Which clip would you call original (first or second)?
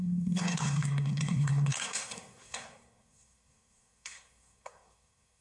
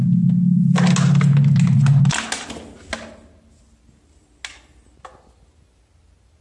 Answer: second